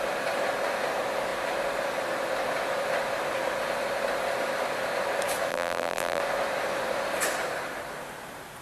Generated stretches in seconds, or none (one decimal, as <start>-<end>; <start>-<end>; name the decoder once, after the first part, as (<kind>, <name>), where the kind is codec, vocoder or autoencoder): 5.5-6.2 (vocoder, BigVGAN v2)